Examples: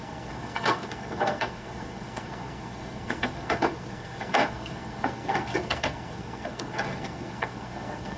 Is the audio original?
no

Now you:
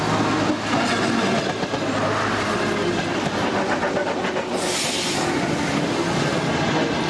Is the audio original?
yes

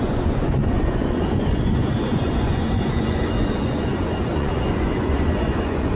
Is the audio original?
no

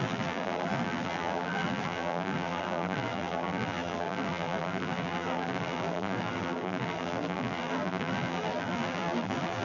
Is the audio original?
no